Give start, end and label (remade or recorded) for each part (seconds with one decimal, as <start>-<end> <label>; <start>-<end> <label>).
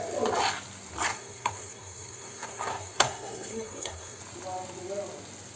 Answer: 0.0-1.1 recorded; 1.1-4.2 remade; 4.2-5.6 recorded